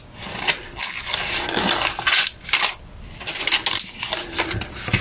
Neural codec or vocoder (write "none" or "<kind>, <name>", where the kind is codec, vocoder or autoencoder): none